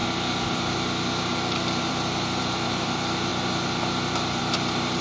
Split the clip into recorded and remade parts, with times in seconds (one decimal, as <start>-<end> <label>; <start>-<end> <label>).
0.0-5.0 remade